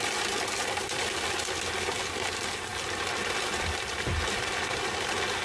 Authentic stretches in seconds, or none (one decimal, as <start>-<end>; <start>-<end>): 0.0-5.4